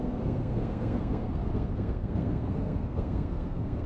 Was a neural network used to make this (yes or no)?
yes